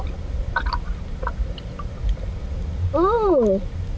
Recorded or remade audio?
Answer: recorded